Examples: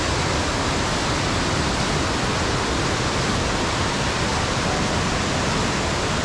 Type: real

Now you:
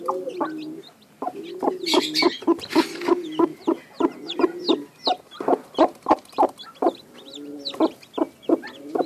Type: real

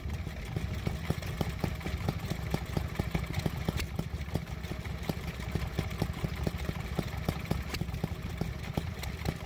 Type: real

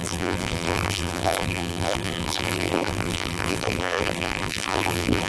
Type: fake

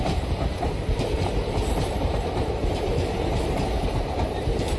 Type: fake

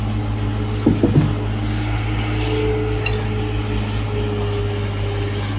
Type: real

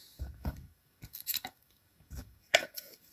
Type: fake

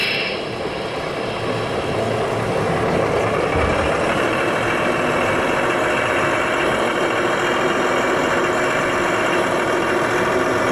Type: real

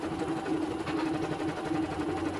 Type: real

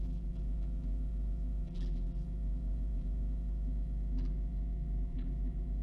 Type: fake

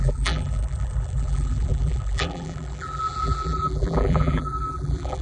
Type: fake